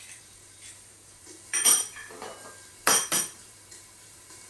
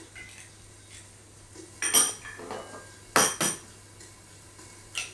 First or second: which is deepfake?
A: first